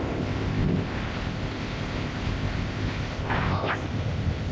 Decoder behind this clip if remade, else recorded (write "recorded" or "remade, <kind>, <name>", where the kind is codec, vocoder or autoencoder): remade, codec, ZipCodec